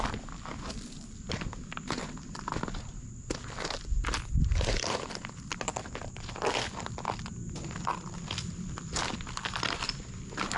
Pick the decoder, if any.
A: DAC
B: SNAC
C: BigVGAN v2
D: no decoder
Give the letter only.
D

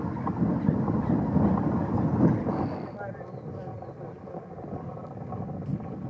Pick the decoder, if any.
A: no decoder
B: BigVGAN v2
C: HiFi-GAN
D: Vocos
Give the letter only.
A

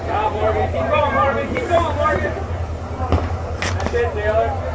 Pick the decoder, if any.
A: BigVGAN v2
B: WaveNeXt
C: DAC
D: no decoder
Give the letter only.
A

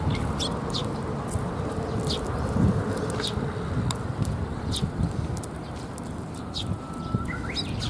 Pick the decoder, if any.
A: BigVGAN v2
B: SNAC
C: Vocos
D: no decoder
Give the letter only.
D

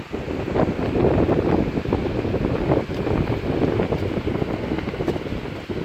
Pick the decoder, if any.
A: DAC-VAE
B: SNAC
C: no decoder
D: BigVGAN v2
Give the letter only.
C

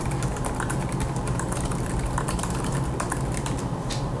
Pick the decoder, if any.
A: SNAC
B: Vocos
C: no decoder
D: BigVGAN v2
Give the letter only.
D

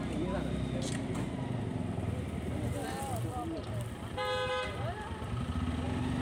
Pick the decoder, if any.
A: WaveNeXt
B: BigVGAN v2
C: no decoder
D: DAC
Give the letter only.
C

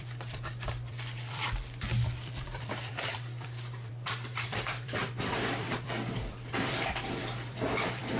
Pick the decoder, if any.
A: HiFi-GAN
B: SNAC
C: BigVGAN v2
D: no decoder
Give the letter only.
C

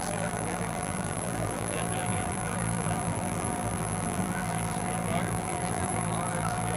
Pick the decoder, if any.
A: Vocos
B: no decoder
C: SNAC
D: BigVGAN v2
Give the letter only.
D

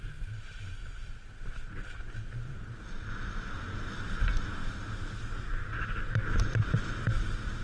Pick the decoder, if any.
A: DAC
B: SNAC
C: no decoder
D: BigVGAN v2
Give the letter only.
C